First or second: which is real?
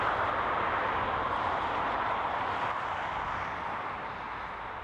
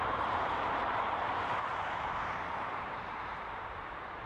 first